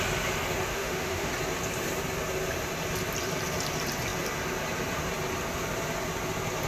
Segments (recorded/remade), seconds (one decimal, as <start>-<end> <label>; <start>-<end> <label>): 0.0-0.7 recorded; 0.7-1.3 remade; 1.3-6.7 recorded